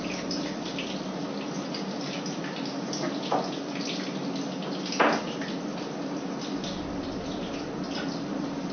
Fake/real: real